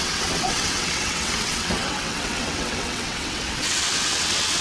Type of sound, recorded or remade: remade